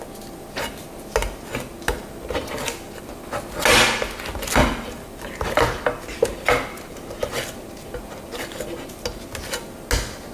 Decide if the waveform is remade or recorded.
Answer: recorded